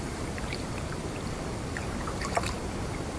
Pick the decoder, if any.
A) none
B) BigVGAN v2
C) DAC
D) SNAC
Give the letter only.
B